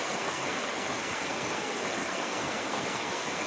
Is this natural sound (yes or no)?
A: no